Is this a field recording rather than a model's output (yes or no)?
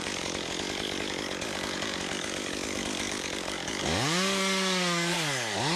no